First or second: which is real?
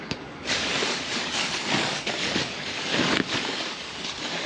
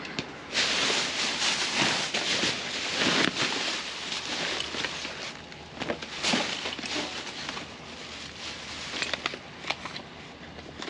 second